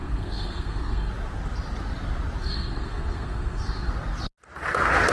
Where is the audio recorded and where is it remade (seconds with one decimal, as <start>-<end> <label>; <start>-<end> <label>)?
0.0-1.1 remade; 1.1-2.4 recorded; 2.4-3.9 remade; 3.9-5.1 recorded